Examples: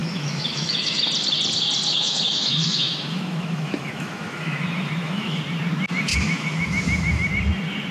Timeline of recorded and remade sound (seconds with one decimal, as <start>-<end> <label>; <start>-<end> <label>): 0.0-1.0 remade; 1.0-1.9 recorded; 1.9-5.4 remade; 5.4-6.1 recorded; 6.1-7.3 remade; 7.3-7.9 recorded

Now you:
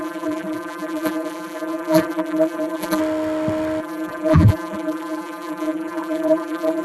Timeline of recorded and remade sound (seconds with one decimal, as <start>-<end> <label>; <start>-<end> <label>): 0.0-3.0 remade; 3.0-3.8 recorded; 3.8-6.8 remade

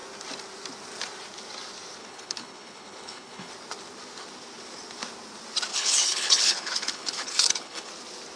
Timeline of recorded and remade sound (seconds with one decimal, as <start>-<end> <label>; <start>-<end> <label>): 0.0-2.0 recorded; 2.0-3.5 remade; 3.5-5.7 recorded; 5.7-7.9 remade; 7.9-8.4 recorded

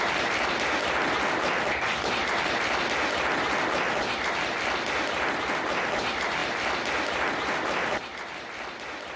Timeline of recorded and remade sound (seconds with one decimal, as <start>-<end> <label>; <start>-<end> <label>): 0.0-9.2 recorded

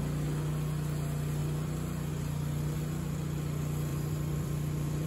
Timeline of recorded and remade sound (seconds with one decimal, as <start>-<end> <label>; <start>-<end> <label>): 0.0-1.4 recorded; 1.4-2.1 remade; 2.1-3.9 recorded; 3.9-5.1 remade

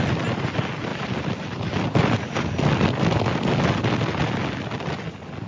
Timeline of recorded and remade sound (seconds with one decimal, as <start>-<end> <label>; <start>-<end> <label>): 0.0-5.5 recorded

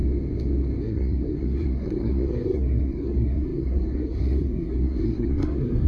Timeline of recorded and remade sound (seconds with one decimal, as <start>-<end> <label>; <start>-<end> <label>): 0.0-0.8 recorded; 0.8-5.9 remade

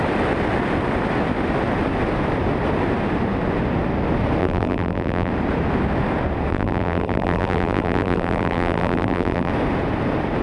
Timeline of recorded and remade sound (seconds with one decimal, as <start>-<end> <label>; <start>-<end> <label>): 0.0-4.4 recorded; 4.4-5.3 remade; 5.3-6.5 recorded; 6.5-9.5 remade; 9.5-10.4 recorded